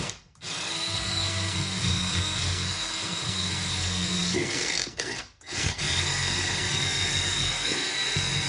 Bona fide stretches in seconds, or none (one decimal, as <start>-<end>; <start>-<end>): none